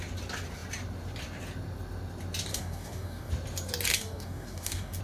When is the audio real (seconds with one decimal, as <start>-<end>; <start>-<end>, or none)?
0.0-2.5; 3.3-3.9